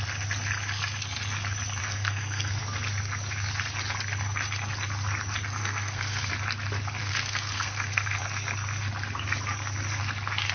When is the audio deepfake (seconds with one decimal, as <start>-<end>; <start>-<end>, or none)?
1.8-2.6; 5.6-6.3; 7.0-8.2